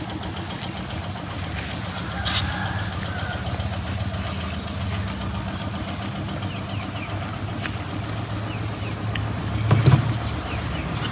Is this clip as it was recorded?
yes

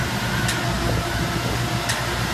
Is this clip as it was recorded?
yes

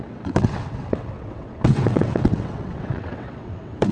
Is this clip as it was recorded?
no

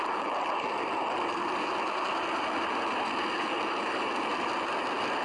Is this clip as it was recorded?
yes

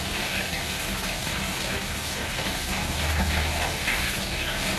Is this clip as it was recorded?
no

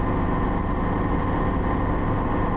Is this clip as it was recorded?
yes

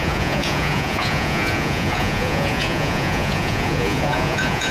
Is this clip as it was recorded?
no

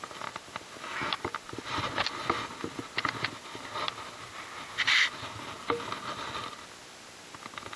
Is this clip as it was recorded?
yes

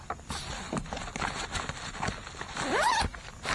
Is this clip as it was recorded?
yes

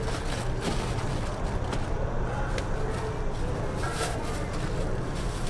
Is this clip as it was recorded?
yes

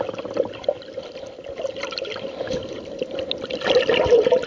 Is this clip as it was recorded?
yes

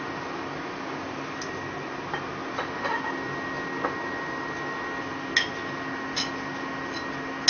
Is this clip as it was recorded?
yes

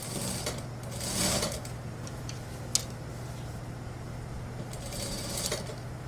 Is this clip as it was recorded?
yes